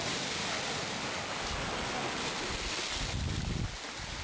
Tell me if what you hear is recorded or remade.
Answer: recorded